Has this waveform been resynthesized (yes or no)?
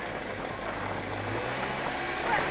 no